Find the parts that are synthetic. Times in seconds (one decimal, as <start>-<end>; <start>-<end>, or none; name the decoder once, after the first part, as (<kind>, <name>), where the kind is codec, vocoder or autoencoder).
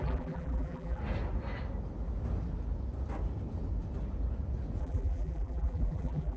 0.0-1.0 (vocoder, BigVGAN v2); 4.8-6.4